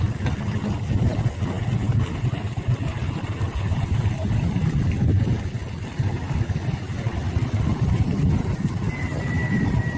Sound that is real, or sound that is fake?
real